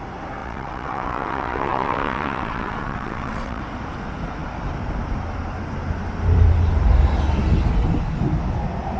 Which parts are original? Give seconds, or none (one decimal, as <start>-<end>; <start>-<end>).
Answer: 0.0-0.4; 3.6-9.0